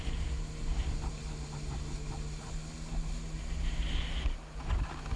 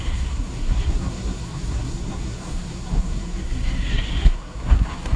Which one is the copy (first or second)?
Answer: second